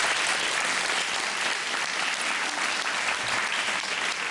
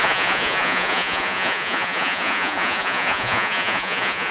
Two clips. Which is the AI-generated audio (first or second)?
second